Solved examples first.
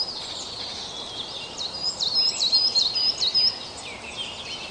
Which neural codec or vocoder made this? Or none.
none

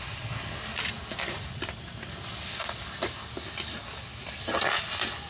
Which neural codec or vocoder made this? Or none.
none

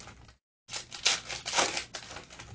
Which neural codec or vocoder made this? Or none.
none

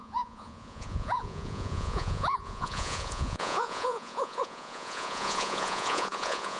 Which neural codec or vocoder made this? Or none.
vocoder, Vocos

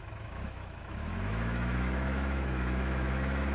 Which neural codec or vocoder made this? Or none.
autoencoder, DAC-VAE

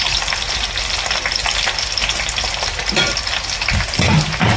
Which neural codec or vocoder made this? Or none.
none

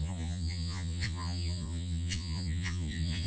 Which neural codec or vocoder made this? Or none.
vocoder, Vocos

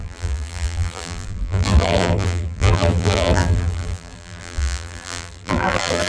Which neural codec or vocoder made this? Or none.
vocoder, BigVGAN v2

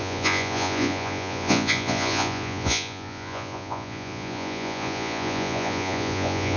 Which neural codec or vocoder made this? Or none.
vocoder, Vocos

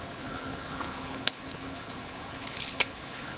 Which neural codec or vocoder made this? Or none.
codec, HILCodec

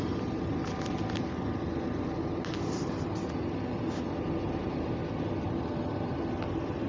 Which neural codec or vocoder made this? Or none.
none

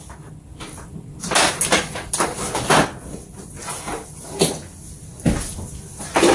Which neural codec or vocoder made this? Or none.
none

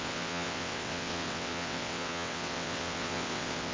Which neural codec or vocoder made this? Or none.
vocoder, WaveNeXt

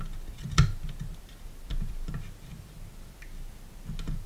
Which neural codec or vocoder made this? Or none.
none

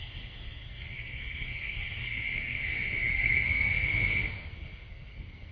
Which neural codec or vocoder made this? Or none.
codec, SNAC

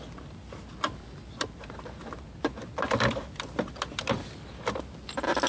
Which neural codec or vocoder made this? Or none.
vocoder, BigVGAN v2